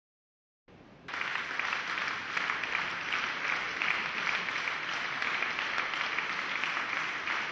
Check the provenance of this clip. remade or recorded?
recorded